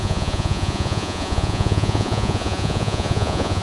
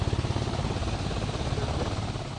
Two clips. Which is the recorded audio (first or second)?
second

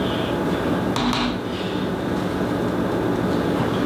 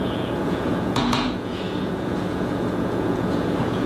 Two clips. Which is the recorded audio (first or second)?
first